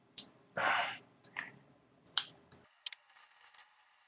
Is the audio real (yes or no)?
yes